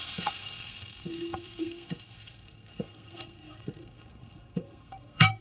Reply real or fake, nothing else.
fake